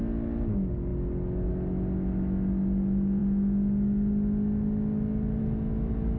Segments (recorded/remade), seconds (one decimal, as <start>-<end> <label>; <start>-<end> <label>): 0.0-6.2 recorded